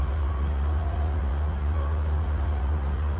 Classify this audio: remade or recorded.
remade